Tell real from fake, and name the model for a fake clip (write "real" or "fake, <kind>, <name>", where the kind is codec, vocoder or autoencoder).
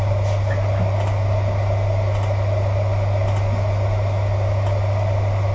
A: real